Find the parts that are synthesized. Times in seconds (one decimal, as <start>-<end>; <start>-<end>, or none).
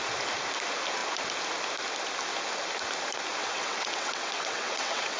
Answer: 3.4-5.2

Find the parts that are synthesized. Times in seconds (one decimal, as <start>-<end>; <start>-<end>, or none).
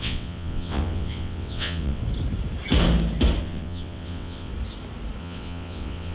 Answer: 0.0-2.0; 3.4-4.5; 5.2-6.1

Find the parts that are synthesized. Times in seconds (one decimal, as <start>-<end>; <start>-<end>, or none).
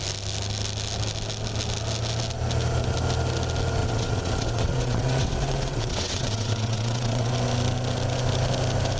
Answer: 3.8-7.3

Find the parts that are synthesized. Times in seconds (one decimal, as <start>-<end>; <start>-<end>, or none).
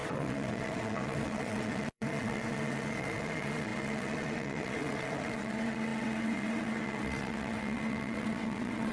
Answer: 0.0-8.9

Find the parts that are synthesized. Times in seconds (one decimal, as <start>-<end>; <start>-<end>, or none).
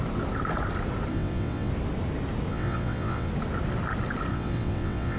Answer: 1.1-1.7; 2.5-3.3; 4.3-5.2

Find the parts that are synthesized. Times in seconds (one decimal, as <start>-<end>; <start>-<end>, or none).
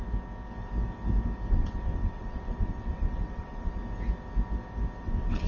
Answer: 1.5-3.8; 5.0-5.5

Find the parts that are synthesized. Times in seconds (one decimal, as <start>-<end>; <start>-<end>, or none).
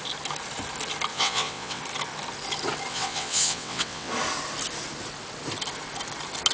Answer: 1.1-1.8; 2.9-4.1